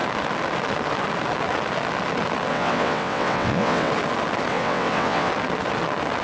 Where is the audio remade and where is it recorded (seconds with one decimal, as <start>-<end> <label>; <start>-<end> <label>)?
0.0-2.5 recorded; 2.5-3.9 remade; 3.9-4.5 recorded; 4.5-5.3 remade; 5.3-6.2 recorded